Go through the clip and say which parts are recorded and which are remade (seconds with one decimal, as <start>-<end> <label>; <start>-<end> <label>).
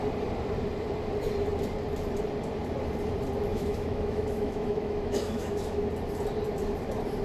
0.0-3.5 recorded; 3.5-5.9 remade; 5.9-7.2 recorded